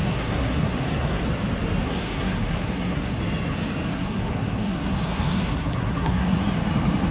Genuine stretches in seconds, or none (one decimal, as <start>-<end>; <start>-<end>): 1.2-1.8; 3.2-3.9; 6.4-7.1